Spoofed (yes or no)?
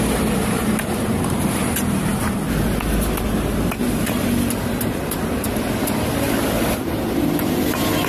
no